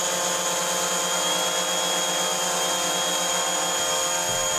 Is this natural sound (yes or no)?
yes